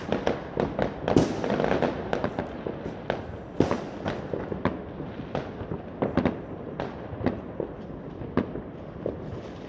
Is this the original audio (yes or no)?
yes